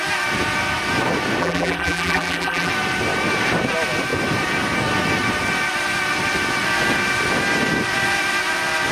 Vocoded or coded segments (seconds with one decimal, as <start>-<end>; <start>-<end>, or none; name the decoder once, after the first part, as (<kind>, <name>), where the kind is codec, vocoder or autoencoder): 1.4-2.7 (vocoder, BigVGAN v2)